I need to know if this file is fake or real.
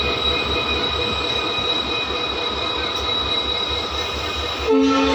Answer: real